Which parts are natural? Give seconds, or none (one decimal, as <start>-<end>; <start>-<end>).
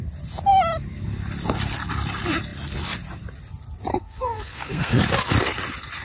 0.0-3.9; 5.0-6.0